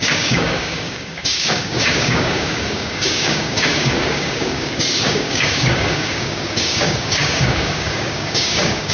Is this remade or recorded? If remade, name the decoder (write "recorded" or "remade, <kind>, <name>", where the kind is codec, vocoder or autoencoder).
remade, codec, DAC